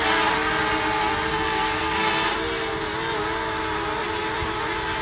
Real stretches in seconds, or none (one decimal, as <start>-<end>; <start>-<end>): 0.0-1.3; 2.1-5.0